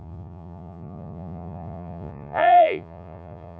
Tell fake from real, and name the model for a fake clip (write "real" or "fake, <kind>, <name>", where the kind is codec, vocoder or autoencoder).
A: fake, vocoder, Vocos